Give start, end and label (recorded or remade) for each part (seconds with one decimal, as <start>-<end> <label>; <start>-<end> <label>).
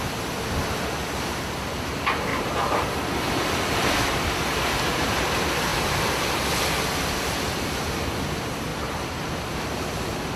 0.0-2.3 recorded; 2.3-3.9 remade; 3.9-8.7 recorded; 8.7-9.6 remade; 9.6-10.4 recorded